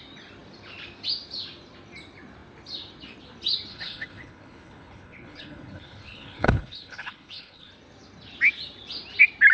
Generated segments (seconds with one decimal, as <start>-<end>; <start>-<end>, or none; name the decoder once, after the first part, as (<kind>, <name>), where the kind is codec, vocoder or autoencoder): 3.7-7.7 (codec, HILCodec)